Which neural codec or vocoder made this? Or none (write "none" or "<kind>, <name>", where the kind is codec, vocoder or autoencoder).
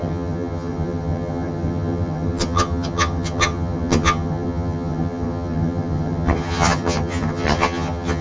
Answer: vocoder, HiFi-GAN